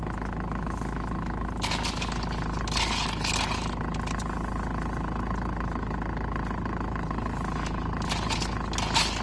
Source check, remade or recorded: recorded